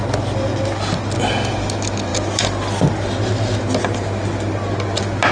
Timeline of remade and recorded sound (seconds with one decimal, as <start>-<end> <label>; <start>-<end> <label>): 0.0-5.3 recorded